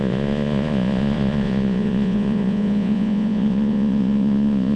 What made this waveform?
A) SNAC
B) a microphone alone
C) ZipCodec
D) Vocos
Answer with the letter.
D